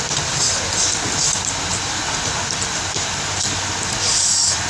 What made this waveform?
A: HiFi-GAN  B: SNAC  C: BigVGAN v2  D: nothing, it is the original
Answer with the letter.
D